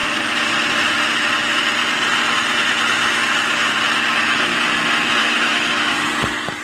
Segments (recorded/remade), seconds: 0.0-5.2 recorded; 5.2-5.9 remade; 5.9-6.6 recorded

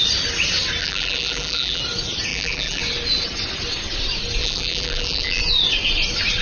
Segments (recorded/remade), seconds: 0.0-0.8 recorded; 0.8-1.8 remade; 1.8-2.3 recorded; 2.3-2.8 remade; 2.8-4.4 recorded; 4.4-5.4 remade; 5.4-6.4 recorded